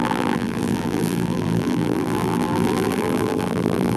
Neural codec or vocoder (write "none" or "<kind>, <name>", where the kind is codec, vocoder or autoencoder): vocoder, BigVGAN v2